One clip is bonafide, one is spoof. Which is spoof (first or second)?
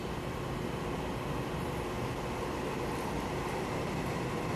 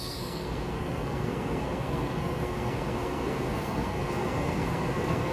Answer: second